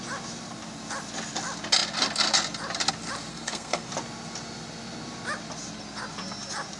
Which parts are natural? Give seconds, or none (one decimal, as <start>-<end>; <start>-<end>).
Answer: 0.0-3.3; 3.9-6.8